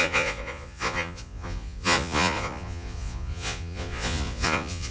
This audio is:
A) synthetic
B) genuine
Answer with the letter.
A